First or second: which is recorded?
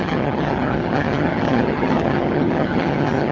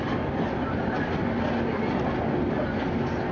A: second